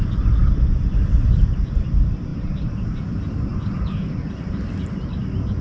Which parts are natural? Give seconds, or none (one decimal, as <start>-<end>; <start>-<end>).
0.0-2.3; 3.0-5.6